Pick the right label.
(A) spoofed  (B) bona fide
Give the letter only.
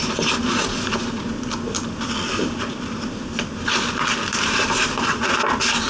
B